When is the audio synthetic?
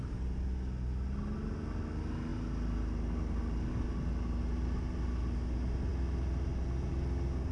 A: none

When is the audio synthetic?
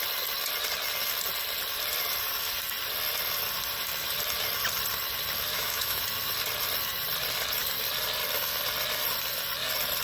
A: 5.5-6.0 (autoencoder, DAC-VAE)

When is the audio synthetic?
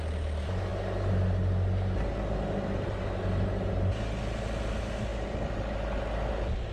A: none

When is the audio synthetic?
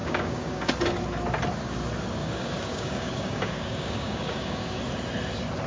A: 0.0-0.7 (codec, DAC); 2.2-4.8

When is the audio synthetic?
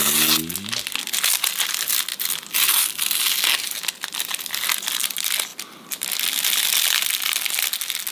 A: none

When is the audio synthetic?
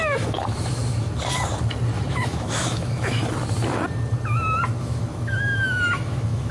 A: 0.0-0.8 (autoencoder, DAC-VAE); 2.1-3.2; 4.8-6.5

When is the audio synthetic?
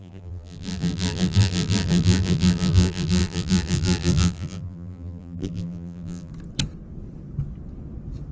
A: 0.0-6.3 (vocoder, BigVGAN v2)